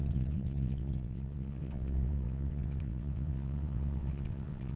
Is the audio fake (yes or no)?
yes